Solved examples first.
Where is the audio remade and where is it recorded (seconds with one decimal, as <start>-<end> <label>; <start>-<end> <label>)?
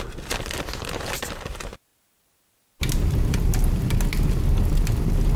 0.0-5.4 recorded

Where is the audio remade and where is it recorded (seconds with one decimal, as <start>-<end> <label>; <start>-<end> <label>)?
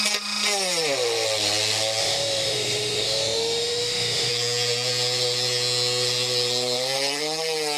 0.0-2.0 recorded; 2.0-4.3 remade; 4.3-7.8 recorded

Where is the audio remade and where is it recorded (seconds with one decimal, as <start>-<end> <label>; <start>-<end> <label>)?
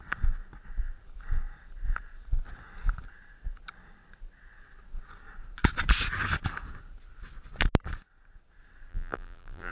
0.0-8.9 recorded; 8.9-9.7 remade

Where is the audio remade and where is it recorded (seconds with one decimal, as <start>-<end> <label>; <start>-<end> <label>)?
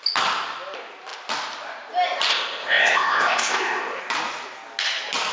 0.0-2.3 recorded; 2.3-4.0 remade; 4.0-5.3 recorded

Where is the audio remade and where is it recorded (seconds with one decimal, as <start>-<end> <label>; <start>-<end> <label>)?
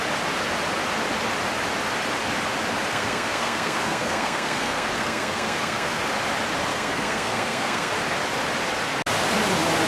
0.0-2.9 recorded; 2.9-6.0 remade; 6.0-6.7 recorded; 6.7-7.9 remade; 7.9-9.9 recorded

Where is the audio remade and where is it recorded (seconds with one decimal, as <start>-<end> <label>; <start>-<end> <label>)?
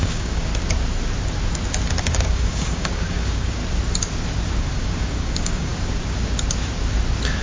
0.0-0.5 remade; 0.5-2.0 recorded; 2.0-3.6 remade; 3.6-4.6 recorded; 4.6-5.7 remade; 5.7-7.4 recorded